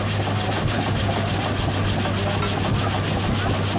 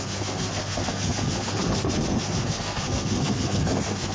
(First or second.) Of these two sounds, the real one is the first